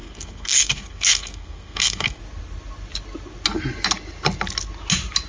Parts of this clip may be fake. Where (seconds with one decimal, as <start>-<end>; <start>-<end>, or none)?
0.0-2.2